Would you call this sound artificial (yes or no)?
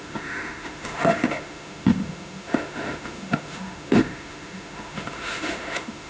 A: yes